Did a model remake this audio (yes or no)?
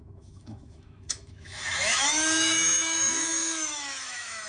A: yes